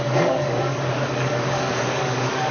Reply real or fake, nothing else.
fake